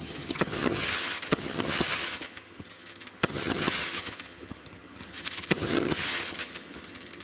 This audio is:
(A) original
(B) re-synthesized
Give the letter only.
B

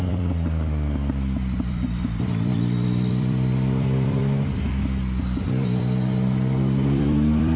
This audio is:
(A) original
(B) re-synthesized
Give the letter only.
B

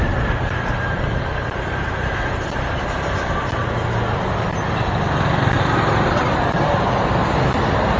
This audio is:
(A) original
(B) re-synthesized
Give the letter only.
A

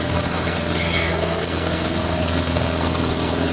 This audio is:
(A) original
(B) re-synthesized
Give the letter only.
B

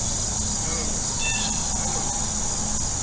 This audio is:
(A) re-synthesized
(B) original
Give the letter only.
B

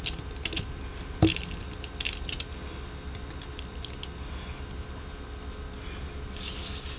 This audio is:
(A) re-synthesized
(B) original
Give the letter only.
B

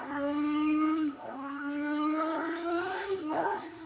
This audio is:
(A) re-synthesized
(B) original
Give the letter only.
A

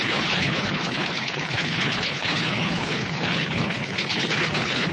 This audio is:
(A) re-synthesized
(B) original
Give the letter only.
A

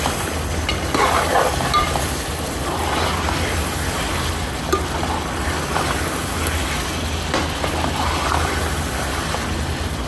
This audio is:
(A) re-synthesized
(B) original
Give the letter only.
B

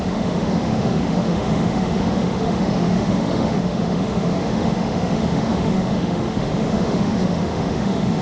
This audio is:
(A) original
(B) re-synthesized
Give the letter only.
B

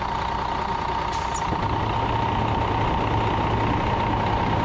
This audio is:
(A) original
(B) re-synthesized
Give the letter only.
A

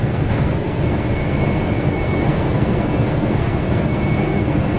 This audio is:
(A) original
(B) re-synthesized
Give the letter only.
B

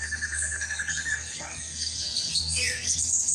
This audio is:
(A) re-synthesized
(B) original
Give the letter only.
A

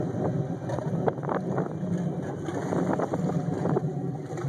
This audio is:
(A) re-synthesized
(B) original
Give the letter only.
A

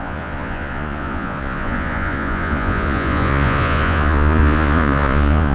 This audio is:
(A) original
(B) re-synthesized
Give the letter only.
B